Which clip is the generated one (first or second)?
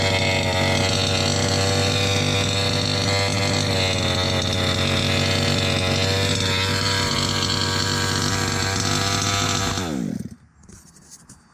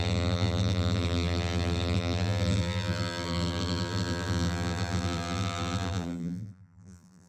second